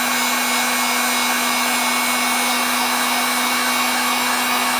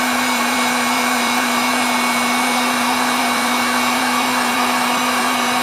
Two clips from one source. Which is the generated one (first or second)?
second